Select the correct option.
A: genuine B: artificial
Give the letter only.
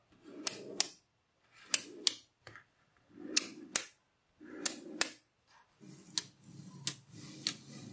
A